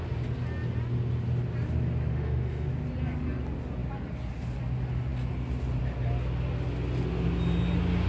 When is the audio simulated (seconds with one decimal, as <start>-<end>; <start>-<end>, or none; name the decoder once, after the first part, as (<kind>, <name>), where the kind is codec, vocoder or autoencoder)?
2.1-2.7 (autoencoder, DAC-VAE)